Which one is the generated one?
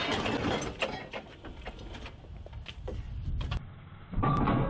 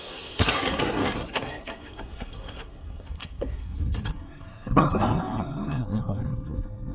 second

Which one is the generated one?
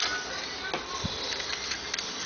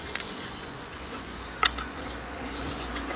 second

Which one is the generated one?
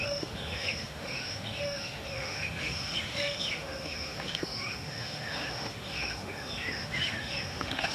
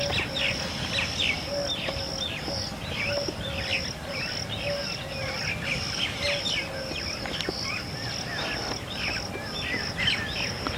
first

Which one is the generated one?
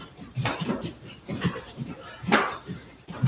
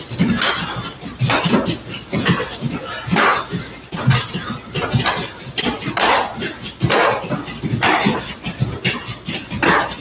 first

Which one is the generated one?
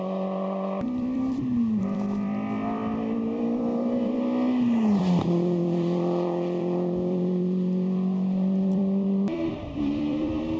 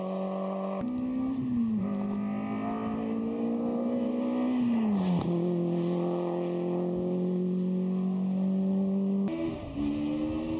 first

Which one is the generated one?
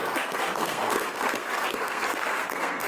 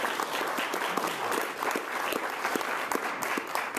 first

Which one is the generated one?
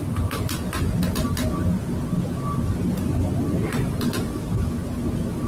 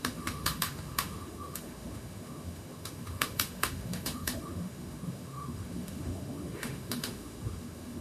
second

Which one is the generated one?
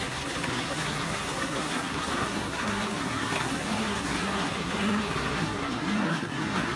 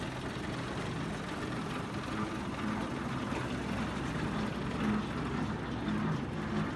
first